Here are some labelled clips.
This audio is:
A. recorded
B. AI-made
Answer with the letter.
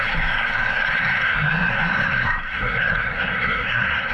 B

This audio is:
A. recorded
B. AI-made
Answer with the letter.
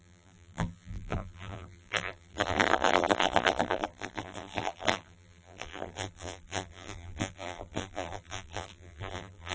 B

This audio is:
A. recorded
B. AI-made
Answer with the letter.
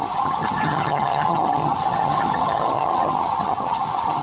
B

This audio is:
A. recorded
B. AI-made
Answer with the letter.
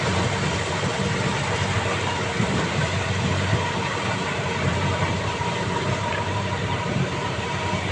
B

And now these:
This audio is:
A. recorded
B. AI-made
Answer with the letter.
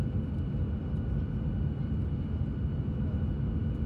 A